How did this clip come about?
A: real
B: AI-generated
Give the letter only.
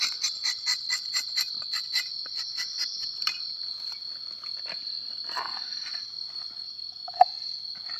A